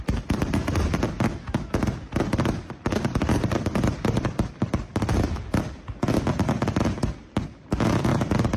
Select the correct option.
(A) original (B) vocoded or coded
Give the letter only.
A